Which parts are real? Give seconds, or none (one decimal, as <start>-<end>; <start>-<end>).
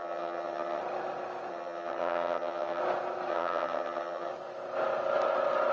0.8-1.5; 2.8-3.3; 4.3-5.7